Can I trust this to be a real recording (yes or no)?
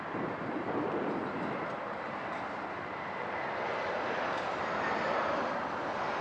yes